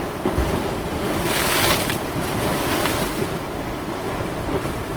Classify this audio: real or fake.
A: real